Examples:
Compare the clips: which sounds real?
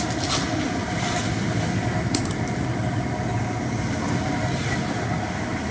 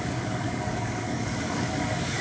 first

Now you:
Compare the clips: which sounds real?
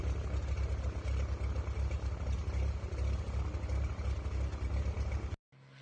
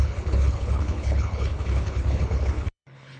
first